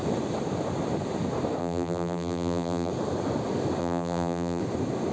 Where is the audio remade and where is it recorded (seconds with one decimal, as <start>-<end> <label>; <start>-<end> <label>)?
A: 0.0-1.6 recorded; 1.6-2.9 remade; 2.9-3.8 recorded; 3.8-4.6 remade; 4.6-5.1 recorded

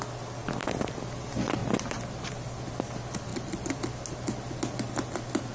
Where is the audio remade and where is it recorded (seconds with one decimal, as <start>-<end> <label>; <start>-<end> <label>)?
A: 0.0-0.4 recorded; 0.4-1.0 remade; 1.0-1.6 recorded; 1.6-2.1 remade; 2.1-3.3 recorded; 3.3-3.8 remade; 3.8-5.5 recorded

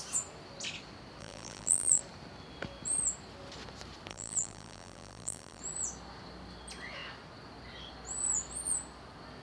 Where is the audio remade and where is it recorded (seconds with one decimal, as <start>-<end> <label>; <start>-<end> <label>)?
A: 0.0-1.2 recorded; 1.2-2.0 remade; 2.0-4.1 recorded; 4.1-5.6 remade; 5.6-9.4 recorded

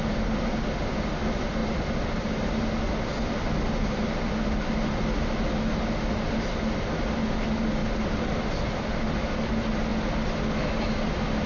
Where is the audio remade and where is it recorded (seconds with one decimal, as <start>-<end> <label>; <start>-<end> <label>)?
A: 0.0-1.6 recorded; 1.6-2.3 remade; 2.3-11.5 recorded

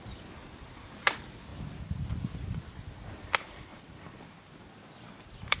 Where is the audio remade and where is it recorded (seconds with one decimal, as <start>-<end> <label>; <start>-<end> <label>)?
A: 0.0-5.6 recorded

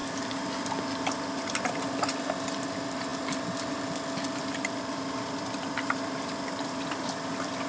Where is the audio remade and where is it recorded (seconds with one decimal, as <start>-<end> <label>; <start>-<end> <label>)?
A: 0.0-2.3 recorded; 2.3-7.7 remade